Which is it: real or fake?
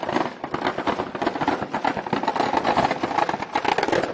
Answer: real